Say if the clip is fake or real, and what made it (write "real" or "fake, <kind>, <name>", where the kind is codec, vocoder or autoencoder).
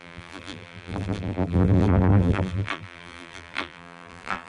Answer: fake, vocoder, BigVGAN v2